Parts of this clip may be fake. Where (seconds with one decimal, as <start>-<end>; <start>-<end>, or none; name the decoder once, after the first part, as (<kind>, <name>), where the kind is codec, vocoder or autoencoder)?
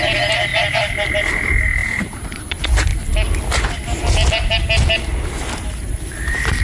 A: 0.0-0.5 (vocoder, BigVGAN v2); 1.1-2.9; 4.3-6.6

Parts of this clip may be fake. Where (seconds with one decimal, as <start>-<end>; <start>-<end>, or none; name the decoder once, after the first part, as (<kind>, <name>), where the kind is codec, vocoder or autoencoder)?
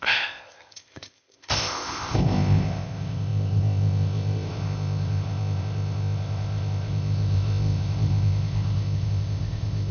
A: 0.0-9.9 (codec, ZipCodec)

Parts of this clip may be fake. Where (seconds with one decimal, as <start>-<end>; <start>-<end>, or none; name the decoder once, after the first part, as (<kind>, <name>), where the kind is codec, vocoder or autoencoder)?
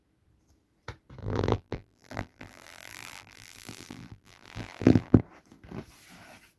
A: 1.2-5.2 (vocoder, BigVGAN v2)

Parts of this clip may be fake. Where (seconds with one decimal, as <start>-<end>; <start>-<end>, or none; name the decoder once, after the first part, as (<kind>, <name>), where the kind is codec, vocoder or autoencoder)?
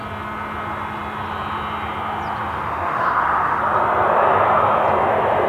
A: 2.5-3.6 (autoencoder, DAC-VAE)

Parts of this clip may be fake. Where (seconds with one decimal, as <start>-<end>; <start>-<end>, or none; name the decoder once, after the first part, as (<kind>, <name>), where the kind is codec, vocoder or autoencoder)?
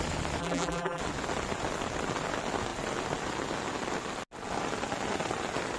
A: 0.4-1.0 (vocoder, BigVGAN v2)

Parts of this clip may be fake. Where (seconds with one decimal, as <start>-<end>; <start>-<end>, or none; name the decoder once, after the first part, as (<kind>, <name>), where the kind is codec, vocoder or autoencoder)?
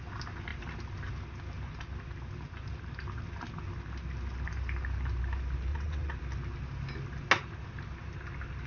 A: 5.7-6.2 (vocoder, WaveNeXt)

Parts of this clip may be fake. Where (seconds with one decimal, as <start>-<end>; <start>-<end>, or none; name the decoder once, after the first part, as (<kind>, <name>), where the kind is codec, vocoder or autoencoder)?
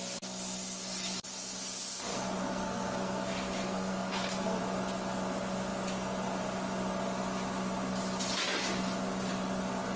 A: 2.1-4.6 (codec, SNAC)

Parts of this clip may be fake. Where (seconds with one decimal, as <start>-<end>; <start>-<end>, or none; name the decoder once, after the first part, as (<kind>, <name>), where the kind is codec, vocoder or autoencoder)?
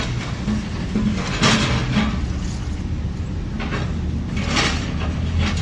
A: none